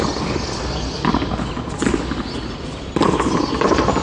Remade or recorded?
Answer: recorded